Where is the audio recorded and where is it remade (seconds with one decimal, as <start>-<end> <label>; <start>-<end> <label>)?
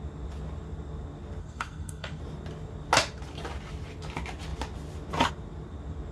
0.0-1.4 recorded; 1.4-2.2 remade; 2.2-6.1 recorded